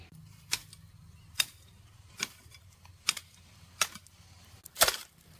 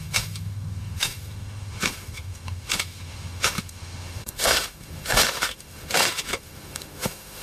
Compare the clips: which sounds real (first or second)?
first